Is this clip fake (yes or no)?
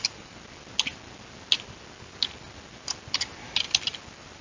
no